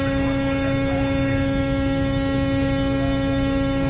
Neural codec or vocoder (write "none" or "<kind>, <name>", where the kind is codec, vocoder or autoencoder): codec, DAC